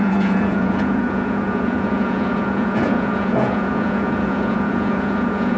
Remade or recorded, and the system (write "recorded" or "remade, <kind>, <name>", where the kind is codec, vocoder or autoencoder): remade, vocoder, Vocos